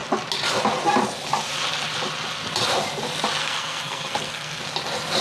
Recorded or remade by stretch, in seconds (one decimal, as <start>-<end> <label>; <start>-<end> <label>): 0.0-3.4 recorded; 3.4-4.6 remade; 4.6-5.2 recorded